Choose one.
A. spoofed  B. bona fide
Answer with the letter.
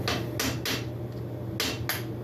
B